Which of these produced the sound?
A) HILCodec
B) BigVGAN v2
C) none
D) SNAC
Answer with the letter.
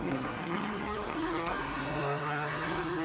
D